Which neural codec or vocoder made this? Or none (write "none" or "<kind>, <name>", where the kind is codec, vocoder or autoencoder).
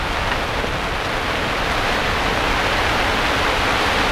none